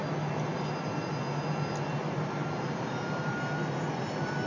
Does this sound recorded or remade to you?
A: recorded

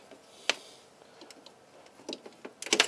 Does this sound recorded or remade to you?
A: recorded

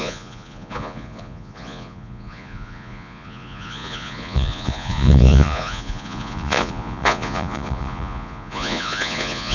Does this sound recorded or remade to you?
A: remade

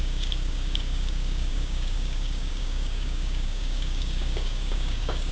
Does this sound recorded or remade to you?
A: remade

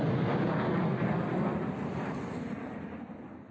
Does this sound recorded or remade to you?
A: recorded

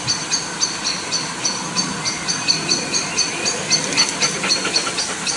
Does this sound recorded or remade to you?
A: recorded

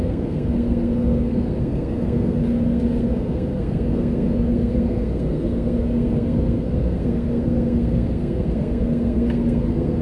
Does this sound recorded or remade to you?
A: remade